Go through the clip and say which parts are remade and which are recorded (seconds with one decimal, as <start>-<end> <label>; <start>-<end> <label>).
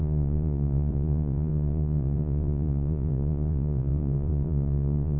0.0-5.2 remade